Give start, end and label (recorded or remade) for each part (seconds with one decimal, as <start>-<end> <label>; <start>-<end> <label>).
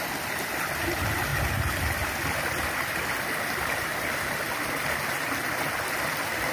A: 0.0-1.3 remade; 1.3-3.0 recorded; 3.0-6.5 remade